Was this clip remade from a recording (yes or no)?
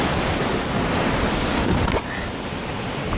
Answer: no